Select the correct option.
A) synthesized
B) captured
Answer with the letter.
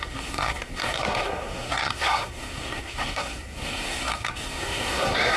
A